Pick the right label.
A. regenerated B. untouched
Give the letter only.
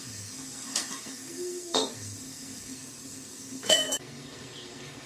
A